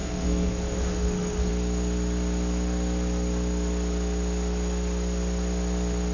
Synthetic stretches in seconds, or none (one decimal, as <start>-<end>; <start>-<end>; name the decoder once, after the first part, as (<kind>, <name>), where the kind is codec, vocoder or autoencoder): 0.0-1.5 (codec, SNAC)